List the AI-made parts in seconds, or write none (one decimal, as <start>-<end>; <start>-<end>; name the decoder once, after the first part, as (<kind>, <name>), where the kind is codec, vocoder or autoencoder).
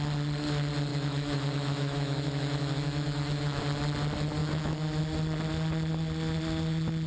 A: 0.9-3.6 (autoencoder, DAC-VAE); 4.4-5.0